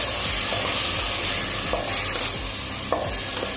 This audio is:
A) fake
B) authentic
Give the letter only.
B